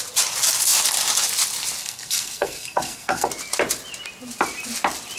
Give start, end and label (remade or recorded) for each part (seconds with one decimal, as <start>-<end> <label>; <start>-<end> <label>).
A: 0.0-1.8 recorded; 1.8-3.3 remade; 3.3-5.2 recorded